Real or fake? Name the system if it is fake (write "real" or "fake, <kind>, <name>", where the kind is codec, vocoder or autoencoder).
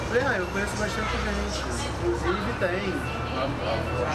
real